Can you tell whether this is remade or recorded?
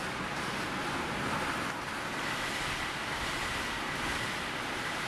recorded